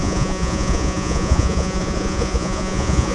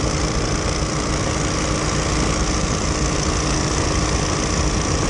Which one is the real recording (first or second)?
second